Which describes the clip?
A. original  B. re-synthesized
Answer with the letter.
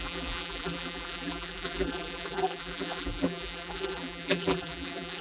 B